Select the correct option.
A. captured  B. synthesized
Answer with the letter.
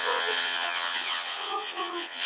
B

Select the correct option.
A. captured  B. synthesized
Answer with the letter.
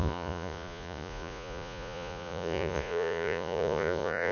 B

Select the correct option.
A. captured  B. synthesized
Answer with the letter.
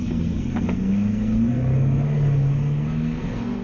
B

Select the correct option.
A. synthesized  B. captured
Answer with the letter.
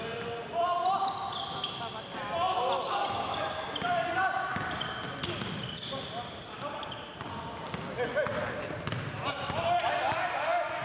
B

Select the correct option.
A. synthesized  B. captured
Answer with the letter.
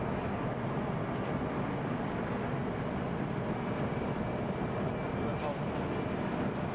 B